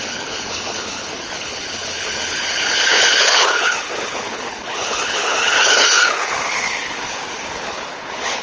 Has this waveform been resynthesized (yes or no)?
yes